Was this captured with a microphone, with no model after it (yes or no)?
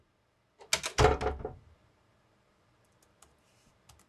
yes